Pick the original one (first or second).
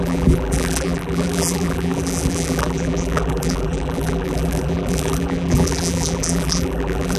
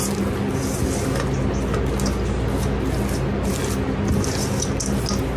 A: second